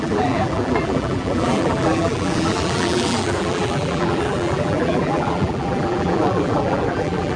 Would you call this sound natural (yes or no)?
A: no